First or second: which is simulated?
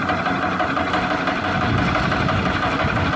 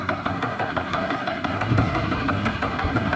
second